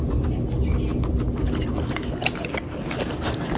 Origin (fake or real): real